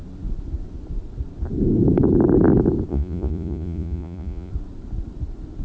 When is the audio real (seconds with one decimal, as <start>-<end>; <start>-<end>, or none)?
0.0-2.9; 4.5-5.6